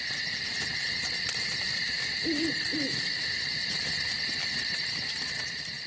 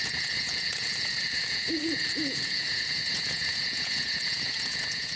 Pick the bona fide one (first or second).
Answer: first